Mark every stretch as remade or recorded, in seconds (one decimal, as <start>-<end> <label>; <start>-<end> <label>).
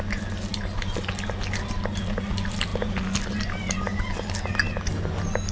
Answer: 0.0-5.5 recorded